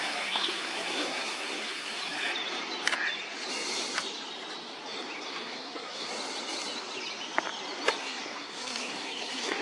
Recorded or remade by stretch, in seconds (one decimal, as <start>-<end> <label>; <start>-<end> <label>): 0.0-2.0 remade; 2.0-5.2 recorded; 5.2-6.1 remade; 6.1-8.0 recorded; 8.0-9.6 remade